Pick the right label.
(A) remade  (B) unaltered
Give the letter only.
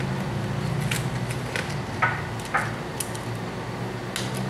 B